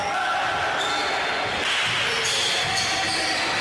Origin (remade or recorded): recorded